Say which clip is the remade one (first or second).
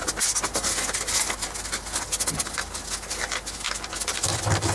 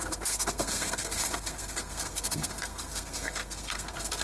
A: second